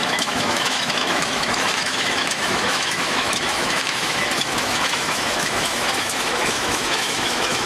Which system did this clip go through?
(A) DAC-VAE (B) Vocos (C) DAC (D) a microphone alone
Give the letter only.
A